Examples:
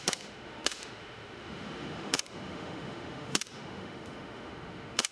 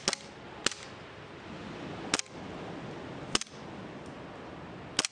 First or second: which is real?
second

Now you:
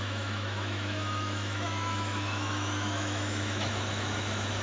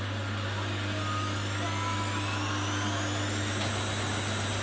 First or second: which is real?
second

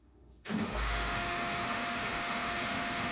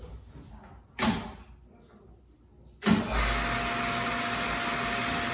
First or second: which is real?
second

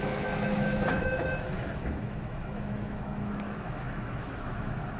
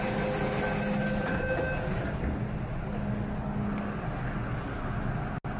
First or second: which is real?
second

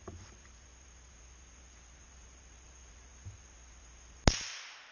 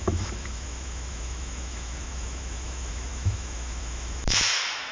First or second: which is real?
first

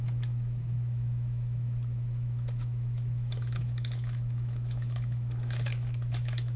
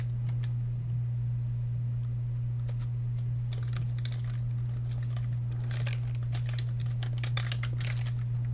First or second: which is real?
second